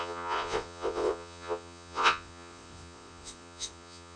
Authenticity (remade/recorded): remade